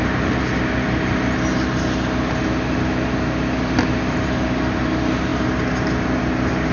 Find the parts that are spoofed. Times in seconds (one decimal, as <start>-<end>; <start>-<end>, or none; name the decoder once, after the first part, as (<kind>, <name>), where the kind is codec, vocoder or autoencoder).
none